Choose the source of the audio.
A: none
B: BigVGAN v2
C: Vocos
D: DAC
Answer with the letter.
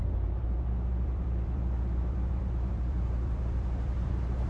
B